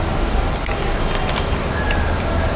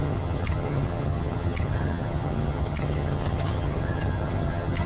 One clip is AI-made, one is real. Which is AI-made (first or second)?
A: second